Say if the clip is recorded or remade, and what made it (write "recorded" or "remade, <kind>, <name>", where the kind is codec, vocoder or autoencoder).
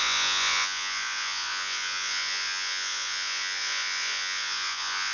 remade, vocoder, Vocos